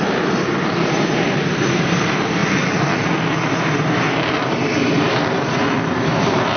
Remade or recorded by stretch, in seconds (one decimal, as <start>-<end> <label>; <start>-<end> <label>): 0.0-2.4 remade; 2.4-3.0 recorded; 3.0-6.6 remade

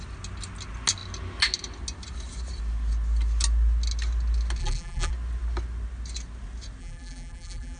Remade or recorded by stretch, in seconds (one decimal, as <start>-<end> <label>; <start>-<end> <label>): 0.0-4.6 recorded; 4.6-5.1 remade; 5.1-6.8 recorded; 6.8-7.8 remade

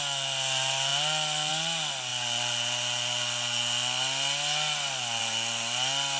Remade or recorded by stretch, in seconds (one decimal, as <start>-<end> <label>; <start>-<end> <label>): 0.0-6.2 recorded

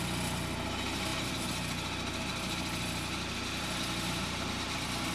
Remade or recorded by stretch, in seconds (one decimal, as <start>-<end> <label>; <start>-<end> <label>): 0.0-5.1 recorded